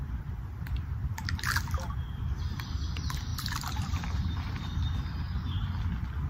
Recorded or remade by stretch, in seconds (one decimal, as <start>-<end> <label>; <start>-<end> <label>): 0.0-3.3 recorded; 3.3-5.2 remade; 5.2-6.3 recorded